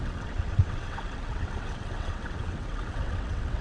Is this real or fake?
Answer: fake